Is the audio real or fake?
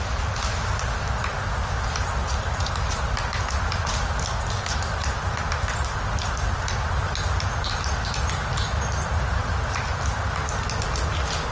real